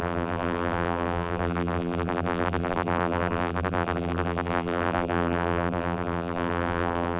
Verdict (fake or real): fake